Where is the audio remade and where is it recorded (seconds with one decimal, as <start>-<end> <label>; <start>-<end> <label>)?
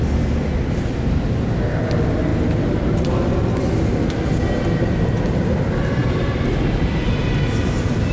0.0-8.1 recorded